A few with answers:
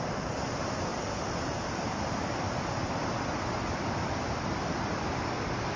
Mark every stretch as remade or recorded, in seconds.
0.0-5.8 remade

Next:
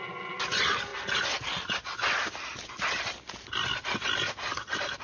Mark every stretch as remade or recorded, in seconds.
0.0-5.0 recorded

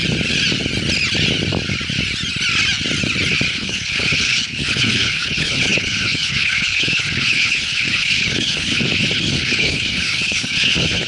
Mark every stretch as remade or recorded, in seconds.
0.0-3.5 recorded; 3.5-11.1 remade

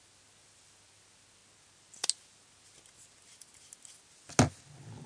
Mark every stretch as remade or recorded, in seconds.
0.0-5.1 recorded

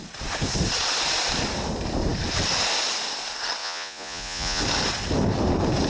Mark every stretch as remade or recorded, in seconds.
0.0-3.6 recorded; 3.6-4.6 remade; 4.6-5.9 recorded